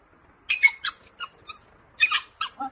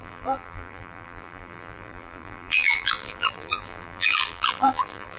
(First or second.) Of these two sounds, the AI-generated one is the second